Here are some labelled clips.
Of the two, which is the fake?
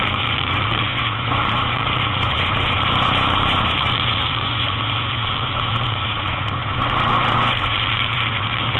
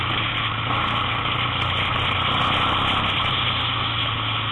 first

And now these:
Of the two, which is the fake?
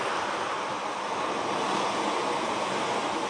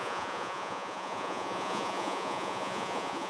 second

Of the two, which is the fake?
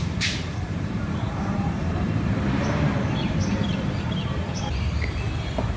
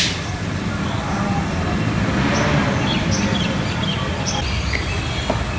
first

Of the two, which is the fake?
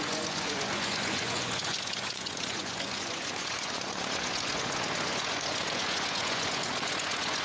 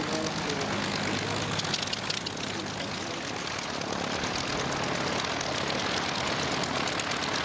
first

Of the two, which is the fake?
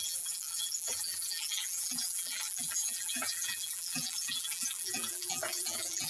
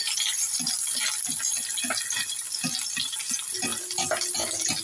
first